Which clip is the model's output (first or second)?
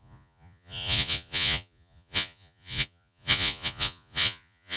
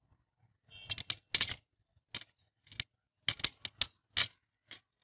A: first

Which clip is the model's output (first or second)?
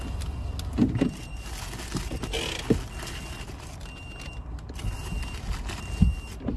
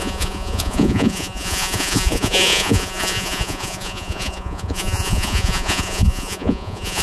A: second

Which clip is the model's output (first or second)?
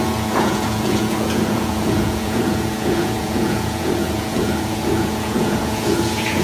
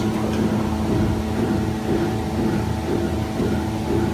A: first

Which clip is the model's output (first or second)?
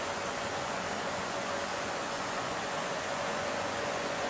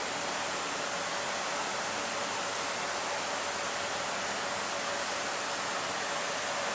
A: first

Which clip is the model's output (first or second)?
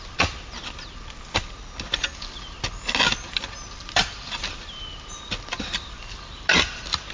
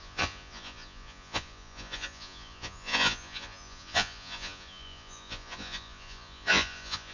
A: second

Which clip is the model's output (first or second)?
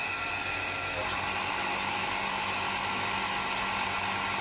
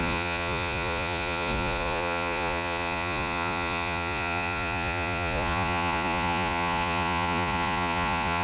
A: second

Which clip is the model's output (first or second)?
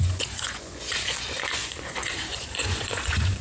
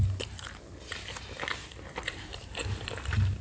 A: first